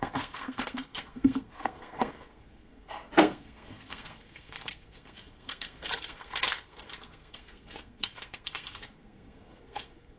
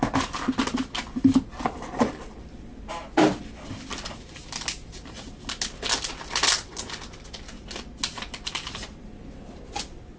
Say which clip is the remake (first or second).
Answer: first